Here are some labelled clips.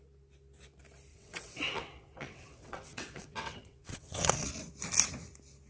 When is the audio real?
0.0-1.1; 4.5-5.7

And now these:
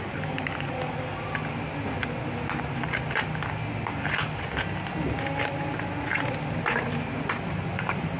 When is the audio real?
0.0-8.2